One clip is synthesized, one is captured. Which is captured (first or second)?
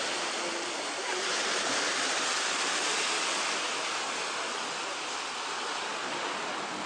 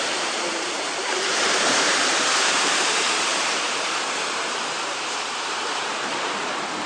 first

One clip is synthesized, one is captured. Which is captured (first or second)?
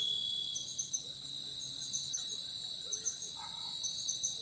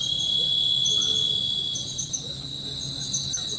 second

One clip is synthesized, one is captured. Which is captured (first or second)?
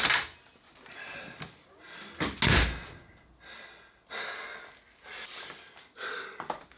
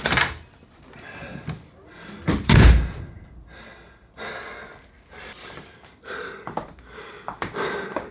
first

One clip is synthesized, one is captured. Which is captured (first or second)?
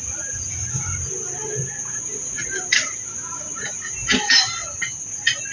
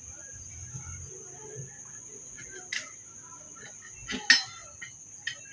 second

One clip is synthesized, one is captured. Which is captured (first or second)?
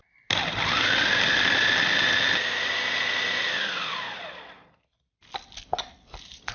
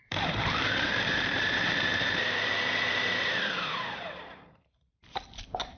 first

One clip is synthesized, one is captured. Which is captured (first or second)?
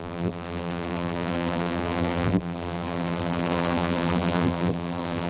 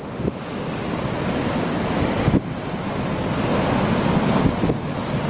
second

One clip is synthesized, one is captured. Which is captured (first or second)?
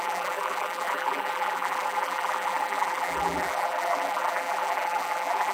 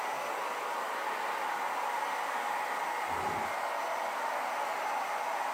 second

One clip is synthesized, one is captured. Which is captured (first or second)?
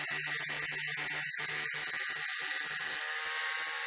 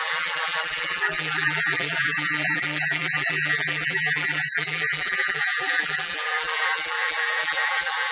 first